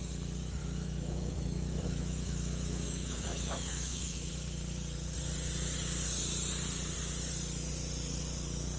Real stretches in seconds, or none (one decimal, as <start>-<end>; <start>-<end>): 0.0-0.6; 4.3-8.8